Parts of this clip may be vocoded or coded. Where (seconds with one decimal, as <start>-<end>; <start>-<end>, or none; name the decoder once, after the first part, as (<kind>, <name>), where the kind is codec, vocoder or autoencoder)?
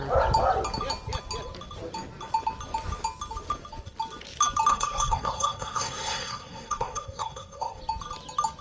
4.7-7.8 (codec, SNAC)